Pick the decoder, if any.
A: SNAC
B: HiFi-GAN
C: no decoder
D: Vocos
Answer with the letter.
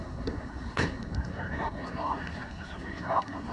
A